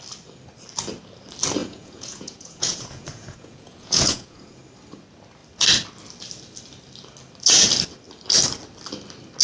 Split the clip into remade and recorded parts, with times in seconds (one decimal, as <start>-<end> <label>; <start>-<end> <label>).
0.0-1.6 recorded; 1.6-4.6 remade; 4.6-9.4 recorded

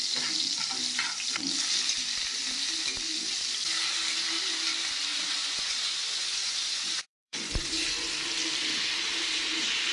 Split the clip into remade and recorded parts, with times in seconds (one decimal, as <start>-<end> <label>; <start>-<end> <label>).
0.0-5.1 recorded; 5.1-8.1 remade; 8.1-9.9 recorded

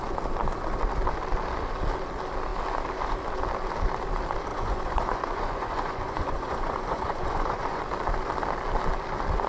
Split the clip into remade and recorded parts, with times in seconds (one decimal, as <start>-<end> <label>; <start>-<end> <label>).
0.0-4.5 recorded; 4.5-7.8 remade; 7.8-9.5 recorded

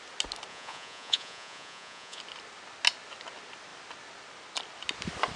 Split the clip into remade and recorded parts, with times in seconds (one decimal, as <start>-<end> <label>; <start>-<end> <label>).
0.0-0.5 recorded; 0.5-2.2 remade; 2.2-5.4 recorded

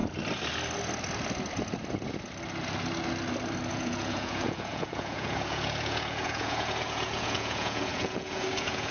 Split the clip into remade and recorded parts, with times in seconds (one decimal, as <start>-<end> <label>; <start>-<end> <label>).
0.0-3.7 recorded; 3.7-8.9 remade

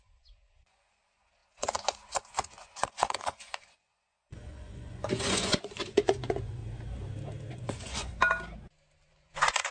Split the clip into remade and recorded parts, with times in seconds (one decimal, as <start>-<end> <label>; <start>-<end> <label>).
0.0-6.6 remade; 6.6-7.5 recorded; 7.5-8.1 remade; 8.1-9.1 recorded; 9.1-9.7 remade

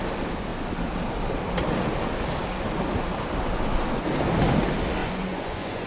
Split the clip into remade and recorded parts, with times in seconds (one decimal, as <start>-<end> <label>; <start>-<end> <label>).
0.0-5.0 recorded; 5.0-5.9 remade